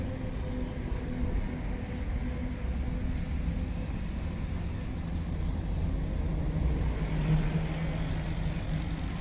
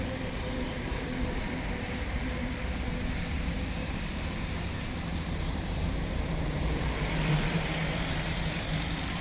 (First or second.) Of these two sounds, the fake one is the second